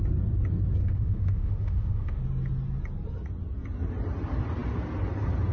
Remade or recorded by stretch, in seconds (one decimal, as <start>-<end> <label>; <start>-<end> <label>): 0.0-0.8 recorded; 0.8-2.2 remade; 2.2-5.5 recorded